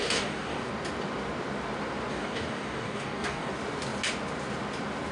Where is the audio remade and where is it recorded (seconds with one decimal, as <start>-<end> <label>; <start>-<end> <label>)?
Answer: 0.0-0.7 remade; 0.7-2.1 recorded; 2.1-3.5 remade; 3.5-5.1 recorded